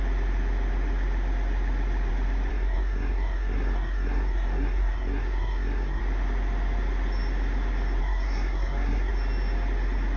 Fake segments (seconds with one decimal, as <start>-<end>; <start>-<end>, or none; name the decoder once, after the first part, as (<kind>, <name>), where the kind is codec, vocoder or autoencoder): 2.5-6.0 (codec, SNAC); 8.0-9.1